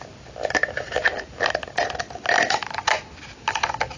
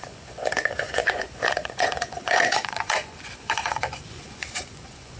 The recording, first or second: first